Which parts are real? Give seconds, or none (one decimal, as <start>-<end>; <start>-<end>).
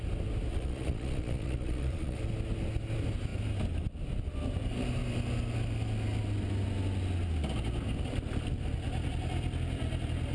0.0-0.5; 2.2-10.3